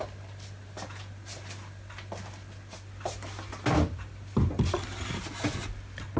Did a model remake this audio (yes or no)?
no